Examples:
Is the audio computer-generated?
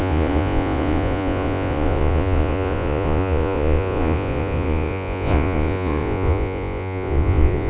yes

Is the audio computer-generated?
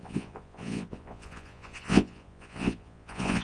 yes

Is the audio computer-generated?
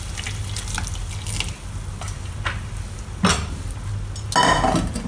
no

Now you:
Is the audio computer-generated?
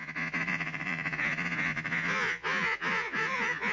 yes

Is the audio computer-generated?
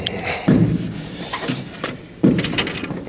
no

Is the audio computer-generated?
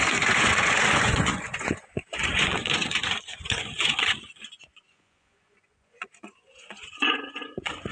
yes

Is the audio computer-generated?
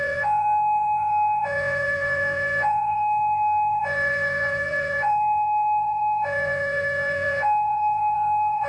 yes